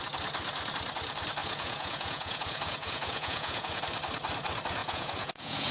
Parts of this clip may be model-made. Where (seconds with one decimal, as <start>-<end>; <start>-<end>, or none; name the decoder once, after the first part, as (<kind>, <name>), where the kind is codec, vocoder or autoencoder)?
1.4-3.8 (vocoder, Vocos); 4.8-5.7